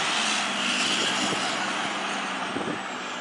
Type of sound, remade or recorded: recorded